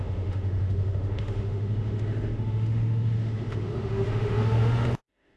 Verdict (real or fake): fake